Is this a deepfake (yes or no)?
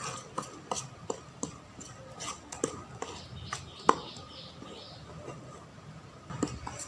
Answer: no